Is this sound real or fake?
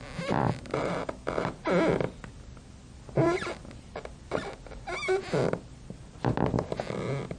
real